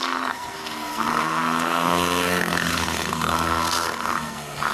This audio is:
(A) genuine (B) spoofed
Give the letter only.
B